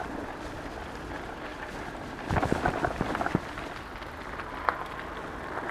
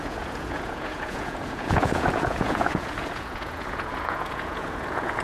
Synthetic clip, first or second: second